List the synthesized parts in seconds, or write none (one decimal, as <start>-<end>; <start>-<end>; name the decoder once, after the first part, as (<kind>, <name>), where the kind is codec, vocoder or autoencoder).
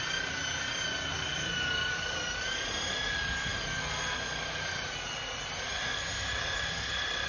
none